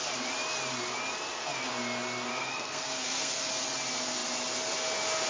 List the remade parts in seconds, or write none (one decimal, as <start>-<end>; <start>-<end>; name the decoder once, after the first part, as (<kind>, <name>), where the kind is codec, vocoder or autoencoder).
2.3-3.5 (codec, SNAC)